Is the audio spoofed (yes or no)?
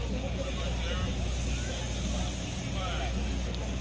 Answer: no